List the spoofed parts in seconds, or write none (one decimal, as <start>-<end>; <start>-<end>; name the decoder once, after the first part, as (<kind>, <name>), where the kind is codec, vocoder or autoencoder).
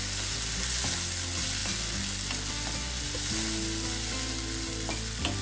none